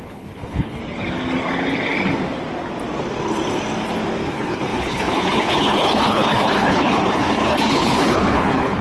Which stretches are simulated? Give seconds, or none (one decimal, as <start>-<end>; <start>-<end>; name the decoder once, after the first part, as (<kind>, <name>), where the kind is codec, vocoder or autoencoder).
0.0-0.8 (codec, HILCodec); 4.3-8.8